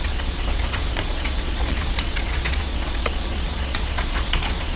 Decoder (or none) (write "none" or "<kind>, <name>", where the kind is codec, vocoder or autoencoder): vocoder, Vocos